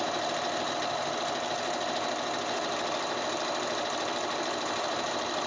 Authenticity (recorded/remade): recorded